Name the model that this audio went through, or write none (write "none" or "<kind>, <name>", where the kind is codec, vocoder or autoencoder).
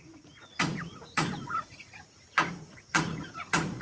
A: vocoder, Vocos